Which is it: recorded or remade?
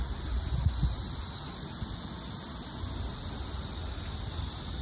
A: recorded